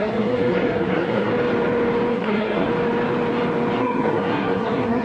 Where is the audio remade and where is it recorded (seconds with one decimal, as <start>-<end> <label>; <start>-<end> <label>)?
0.0-1.3 remade; 1.3-2.1 recorded; 2.1-2.7 remade; 2.7-3.8 recorded; 3.8-5.0 remade